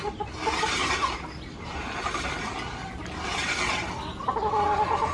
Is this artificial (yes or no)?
no